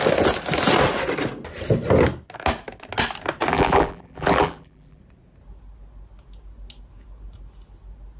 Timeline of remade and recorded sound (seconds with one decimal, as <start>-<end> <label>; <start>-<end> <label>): 0.0-3.5 recorded; 3.5-5.0 remade; 5.0-8.2 recorded